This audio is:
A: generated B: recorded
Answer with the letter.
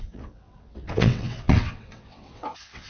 A